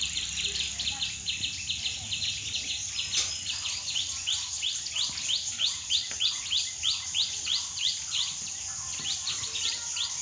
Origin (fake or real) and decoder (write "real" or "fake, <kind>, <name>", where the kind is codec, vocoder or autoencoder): real